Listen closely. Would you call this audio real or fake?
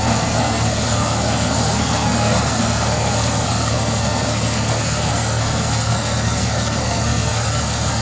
fake